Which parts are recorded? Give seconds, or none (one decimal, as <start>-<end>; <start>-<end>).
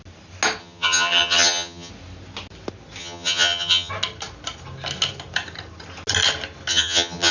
0.0-0.6; 1.9-3.0; 3.9-6.7